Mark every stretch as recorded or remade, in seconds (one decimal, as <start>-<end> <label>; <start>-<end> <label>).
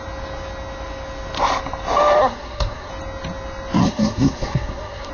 0.0-2.2 recorded; 2.2-2.9 remade; 2.9-3.8 recorded; 3.8-5.1 remade